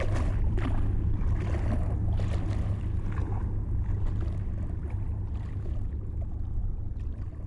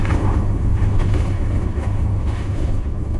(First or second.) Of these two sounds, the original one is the first